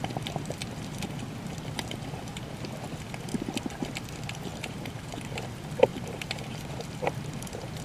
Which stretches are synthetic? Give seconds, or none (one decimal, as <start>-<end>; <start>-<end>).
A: 4.5-5.2; 5.9-7.8